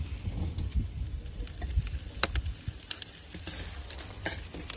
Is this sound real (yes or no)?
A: yes